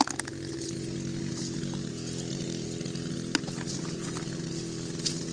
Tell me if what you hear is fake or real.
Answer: real